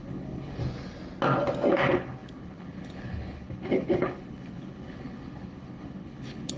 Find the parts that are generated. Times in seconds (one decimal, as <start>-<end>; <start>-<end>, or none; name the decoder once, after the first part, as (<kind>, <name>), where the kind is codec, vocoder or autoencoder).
0.0-0.6 (codec, HILCodec); 1.7-6.6